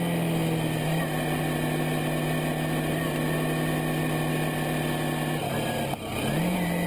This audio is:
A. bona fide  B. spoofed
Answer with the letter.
A